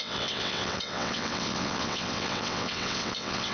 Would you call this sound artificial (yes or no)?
yes